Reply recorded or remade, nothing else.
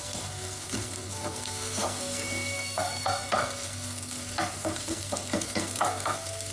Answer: remade